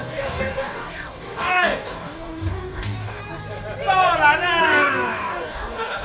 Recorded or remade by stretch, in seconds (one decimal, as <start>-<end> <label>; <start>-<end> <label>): 0.0-3.2 remade; 3.2-4.6 recorded; 4.6-6.0 remade